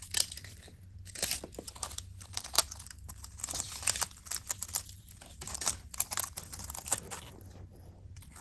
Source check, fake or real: fake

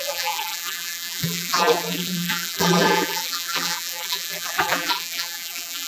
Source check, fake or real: fake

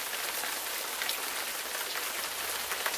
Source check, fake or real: real